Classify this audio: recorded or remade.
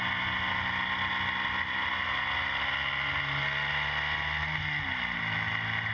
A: recorded